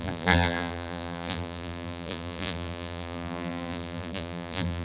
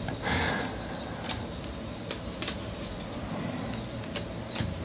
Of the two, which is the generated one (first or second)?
first